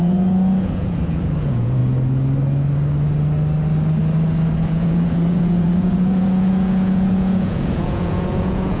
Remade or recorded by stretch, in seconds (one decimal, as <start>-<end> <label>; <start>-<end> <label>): 0.0-1.8 remade; 1.8-4.5 recorded; 4.5-8.8 remade